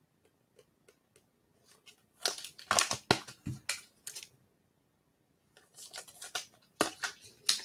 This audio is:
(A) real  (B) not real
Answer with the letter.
A